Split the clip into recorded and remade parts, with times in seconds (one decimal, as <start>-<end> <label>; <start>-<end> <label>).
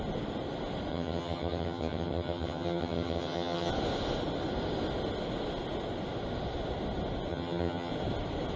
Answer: 0.0-0.9 recorded; 0.9-3.7 remade; 3.7-7.3 recorded; 7.3-7.9 remade; 7.9-8.6 recorded